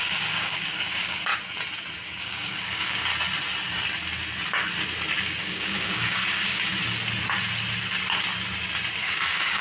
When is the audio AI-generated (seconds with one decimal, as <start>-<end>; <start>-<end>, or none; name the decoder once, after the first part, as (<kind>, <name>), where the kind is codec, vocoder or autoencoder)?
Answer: 0.0-1.3 (codec, DAC); 2.2-3.1; 5.2-6.7; 9.0-9.6